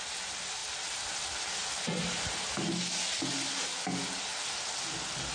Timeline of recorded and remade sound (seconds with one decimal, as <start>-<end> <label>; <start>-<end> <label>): 0.0-5.3 recorded